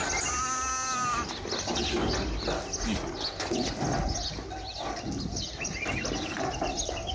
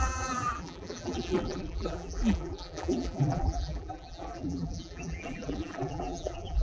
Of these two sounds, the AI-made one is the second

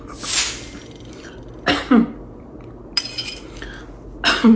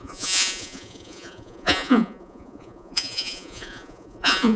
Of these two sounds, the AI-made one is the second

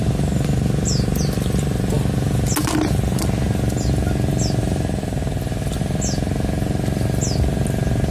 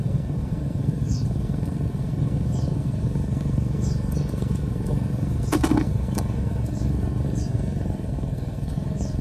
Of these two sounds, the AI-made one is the second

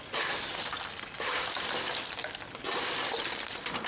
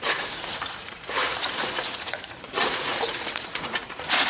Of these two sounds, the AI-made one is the second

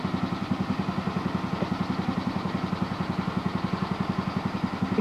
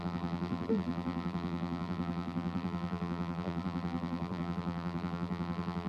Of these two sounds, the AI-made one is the second